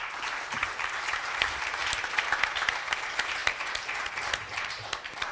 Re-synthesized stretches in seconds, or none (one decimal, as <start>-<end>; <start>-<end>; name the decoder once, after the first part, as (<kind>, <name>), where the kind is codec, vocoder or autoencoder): 0.0-1.8 (vocoder, BigVGAN v2); 2.7-5.3

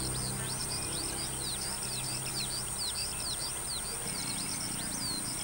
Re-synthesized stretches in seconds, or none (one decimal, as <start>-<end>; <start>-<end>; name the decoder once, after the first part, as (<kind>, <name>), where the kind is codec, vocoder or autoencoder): 0.6-1.2 (vocoder, BigVGAN v2)

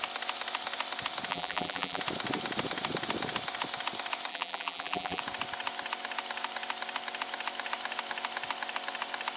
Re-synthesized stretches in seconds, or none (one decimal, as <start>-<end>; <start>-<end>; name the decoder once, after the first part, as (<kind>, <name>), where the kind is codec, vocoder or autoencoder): 1.3-2.0 (vocoder, BigVGAN v2); 4.3-5.2

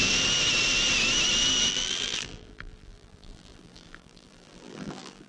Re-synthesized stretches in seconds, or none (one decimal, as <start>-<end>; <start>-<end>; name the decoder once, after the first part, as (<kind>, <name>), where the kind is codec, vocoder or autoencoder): 1.7-5.3 (vocoder, BigVGAN v2)

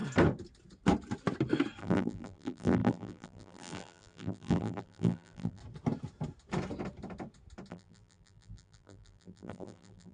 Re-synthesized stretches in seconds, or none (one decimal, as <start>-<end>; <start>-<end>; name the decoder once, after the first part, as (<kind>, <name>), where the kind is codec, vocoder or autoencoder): 1.8-5.6 (vocoder, BigVGAN v2); 7.7-10.1

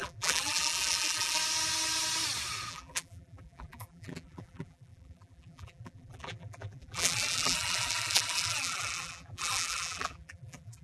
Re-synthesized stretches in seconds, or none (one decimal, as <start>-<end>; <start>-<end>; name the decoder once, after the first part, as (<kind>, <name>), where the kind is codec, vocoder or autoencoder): 0.0-1.4 (vocoder, BigVGAN v2); 2.7-10.8